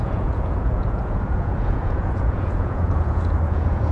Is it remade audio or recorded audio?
remade